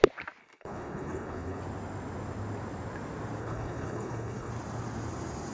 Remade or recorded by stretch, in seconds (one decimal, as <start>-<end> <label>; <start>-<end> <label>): 0.0-0.4 recorded; 0.4-1.6 remade; 1.6-3.4 recorded; 3.4-4.5 remade; 4.5-5.5 recorded